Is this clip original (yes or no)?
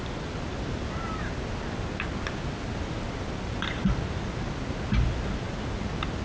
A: yes